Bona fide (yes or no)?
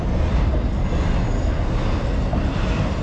yes